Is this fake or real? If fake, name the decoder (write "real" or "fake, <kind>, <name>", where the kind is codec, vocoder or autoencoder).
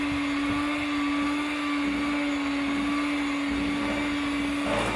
real